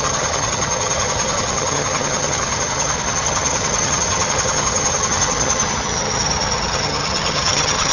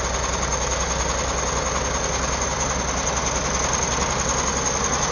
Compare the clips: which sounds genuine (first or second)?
second